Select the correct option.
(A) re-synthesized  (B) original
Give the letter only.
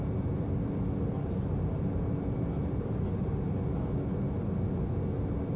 B